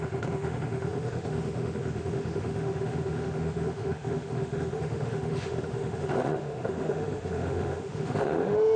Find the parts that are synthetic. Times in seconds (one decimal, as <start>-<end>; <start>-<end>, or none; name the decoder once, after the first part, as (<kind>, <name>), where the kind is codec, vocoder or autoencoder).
0.0-8.8 (autoencoder, DAC-VAE)